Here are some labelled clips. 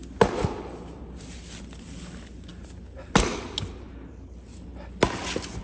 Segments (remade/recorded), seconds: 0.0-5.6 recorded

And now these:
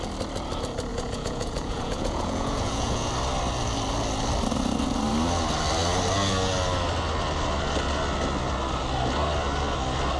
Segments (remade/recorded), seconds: 0.0-0.9 recorded; 0.9-3.1 remade; 3.1-10.2 recorded

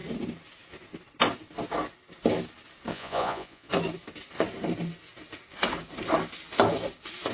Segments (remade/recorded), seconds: 0.0-2.9 recorded; 2.9-3.7 remade; 3.7-7.3 recorded